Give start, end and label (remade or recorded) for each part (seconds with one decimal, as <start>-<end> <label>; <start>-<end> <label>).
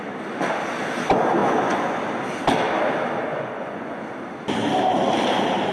0.0-1.4 recorded; 1.4-2.0 remade; 2.0-3.3 recorded; 3.3-4.0 remade; 4.0-5.7 recorded